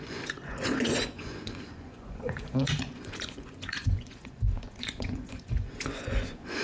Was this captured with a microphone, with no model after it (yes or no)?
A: no